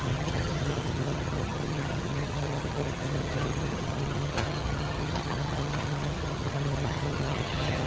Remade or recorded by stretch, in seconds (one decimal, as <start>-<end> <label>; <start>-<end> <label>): 0.0-7.9 remade